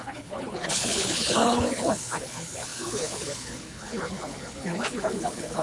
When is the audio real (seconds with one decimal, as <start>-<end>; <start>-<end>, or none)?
none